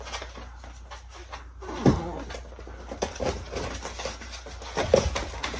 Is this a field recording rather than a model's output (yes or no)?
yes